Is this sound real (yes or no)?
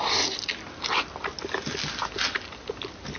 yes